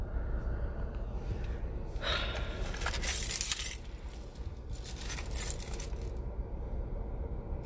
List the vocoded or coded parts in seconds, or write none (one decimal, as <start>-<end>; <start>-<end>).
none

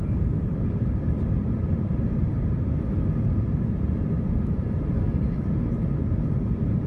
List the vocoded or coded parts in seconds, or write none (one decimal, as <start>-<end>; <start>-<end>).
0.0-2.7; 4.0-6.9